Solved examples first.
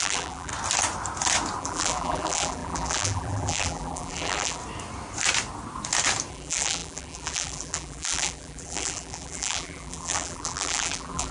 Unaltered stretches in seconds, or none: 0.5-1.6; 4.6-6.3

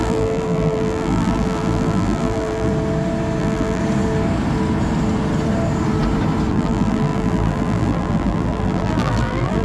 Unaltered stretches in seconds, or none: 2.7-3.4; 3.8-6.5